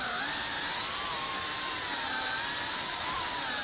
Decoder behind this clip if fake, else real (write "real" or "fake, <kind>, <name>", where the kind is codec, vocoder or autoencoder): real